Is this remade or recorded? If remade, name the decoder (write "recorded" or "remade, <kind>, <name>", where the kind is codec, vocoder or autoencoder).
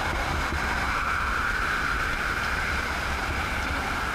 remade, vocoder, BigVGAN v2